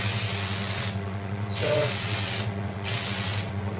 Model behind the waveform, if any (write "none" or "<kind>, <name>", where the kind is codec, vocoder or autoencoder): vocoder, WaveNeXt